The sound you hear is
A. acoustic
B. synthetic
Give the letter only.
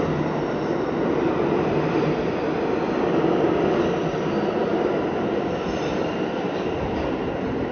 A